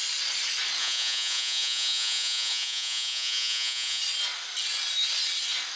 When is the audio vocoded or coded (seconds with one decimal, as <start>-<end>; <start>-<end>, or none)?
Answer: 0.8-4.0